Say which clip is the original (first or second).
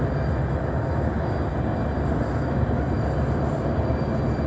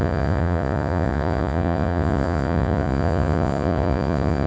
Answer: first